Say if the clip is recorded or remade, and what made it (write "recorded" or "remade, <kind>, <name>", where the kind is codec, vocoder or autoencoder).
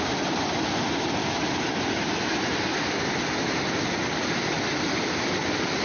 recorded